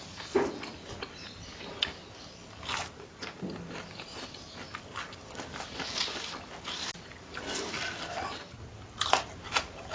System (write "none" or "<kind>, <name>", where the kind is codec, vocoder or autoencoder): none